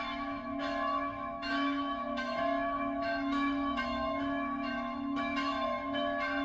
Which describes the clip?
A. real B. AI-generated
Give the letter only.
B